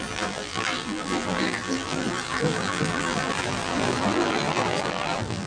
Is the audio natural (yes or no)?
no